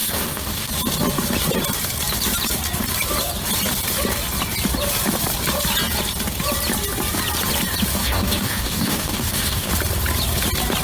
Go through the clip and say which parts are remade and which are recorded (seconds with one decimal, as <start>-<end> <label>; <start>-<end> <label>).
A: 0.0-0.7 remade; 0.7-8.0 recorded; 8.0-9.7 remade; 9.7-10.8 recorded